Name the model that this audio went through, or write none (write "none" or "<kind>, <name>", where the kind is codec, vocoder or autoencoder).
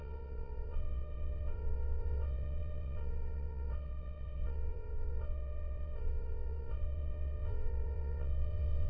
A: vocoder, WaveNeXt